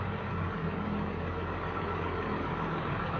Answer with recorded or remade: remade